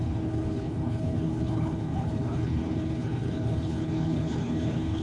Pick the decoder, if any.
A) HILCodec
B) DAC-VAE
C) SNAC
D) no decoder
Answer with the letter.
A